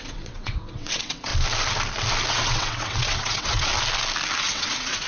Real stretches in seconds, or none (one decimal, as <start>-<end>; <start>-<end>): 1.3-2.3; 3.7-4.4